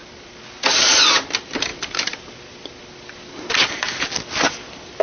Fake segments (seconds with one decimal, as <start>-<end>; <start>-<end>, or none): none

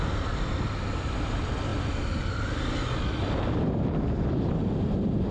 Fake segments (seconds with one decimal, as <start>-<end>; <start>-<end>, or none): none

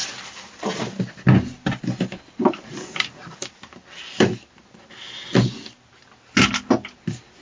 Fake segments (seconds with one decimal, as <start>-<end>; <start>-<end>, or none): 0.0-1.8; 3.4-4.9

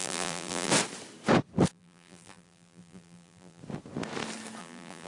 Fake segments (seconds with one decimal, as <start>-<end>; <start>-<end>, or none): 0.0-0.7; 1.7-3.6; 4.6-5.1

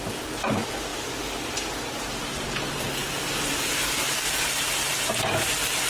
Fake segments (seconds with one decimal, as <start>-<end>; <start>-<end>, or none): 0.0-5.9

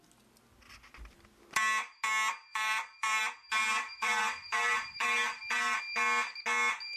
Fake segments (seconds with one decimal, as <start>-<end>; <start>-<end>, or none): 2.5-3.2; 3.6-5.8

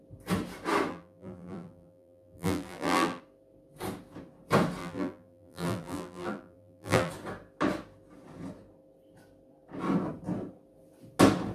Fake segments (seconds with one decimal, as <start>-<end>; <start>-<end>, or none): 0.9-3.2; 4.8-7.1